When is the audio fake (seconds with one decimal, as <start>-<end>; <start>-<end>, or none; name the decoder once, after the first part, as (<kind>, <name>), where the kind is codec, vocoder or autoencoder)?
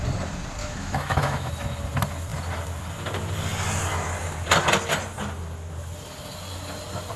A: 0.6-1.5 (autoencoder, DAC-VAE)